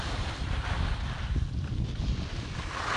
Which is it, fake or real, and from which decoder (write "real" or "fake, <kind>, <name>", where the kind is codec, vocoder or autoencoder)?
real